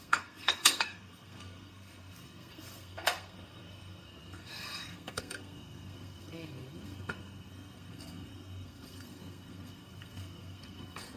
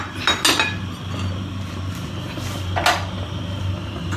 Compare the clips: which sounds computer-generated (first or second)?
first